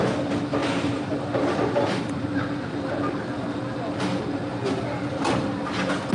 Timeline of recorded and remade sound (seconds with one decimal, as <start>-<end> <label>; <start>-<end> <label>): 0.0-0.6 recorded; 0.6-2.4 remade; 2.4-6.1 recorded